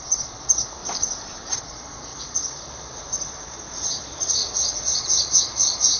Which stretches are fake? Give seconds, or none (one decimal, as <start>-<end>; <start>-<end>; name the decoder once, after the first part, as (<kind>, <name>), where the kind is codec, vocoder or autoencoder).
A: 0.0-0.8 (vocoder, Vocos); 1.5-6.0